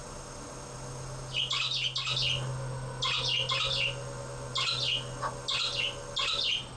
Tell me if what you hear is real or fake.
real